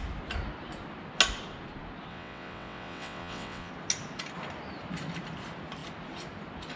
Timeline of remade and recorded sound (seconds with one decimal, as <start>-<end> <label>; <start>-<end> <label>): 0.0-2.1 recorded; 2.1-3.7 remade; 3.7-6.8 recorded